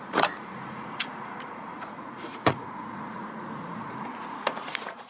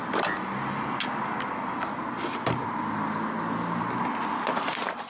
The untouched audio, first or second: second